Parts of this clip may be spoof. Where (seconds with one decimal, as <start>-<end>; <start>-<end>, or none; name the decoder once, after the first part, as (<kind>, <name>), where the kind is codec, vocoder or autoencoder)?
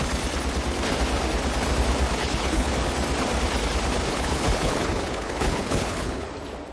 2.2-2.7 (codec, HILCodec); 4.1-6.3